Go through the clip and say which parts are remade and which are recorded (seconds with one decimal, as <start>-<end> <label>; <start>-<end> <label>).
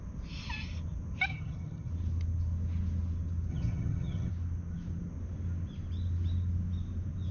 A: 0.0-1.3 recorded; 1.3-1.9 remade; 1.9-3.5 recorded; 3.5-4.3 remade; 4.3-7.3 recorded